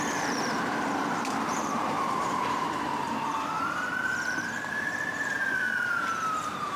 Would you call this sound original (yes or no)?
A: no